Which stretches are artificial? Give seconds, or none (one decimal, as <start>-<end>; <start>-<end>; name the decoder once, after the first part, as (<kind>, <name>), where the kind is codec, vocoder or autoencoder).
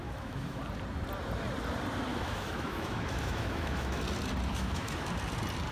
0.0-0.6 (autoencoder, DAC-VAE); 2.1-4.0; 4.5-5.1